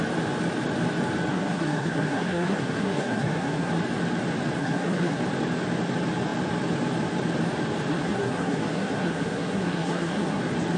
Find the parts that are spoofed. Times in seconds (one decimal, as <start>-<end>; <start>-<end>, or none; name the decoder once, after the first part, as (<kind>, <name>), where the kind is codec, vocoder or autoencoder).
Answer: 1.3-3.7 (codec, SNAC); 4.6-5.2; 7.9-10.4